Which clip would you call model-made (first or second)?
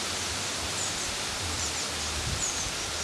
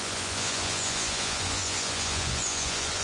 second